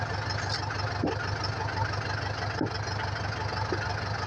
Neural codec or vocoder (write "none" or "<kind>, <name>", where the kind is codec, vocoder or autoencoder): none